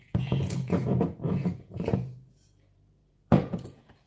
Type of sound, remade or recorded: remade